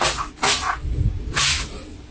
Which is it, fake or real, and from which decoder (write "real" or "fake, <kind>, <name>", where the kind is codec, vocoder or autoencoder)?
real